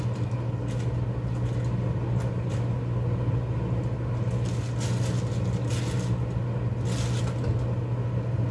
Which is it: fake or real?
real